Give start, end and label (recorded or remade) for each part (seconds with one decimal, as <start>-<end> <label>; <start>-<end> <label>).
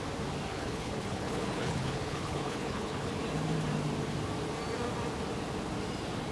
0.0-0.5 recorded; 0.5-3.1 remade; 3.1-6.3 recorded